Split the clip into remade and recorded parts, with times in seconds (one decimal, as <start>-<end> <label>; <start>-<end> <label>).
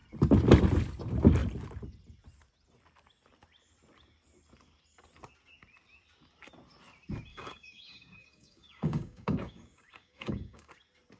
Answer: 0.0-7.3 recorded; 7.3-10.7 remade; 10.7-11.2 recorded